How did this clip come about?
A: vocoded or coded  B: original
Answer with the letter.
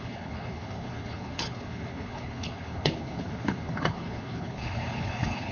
A